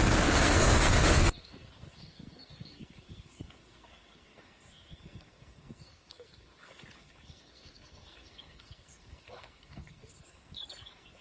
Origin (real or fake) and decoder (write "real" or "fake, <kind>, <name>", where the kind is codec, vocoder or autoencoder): fake, codec, SNAC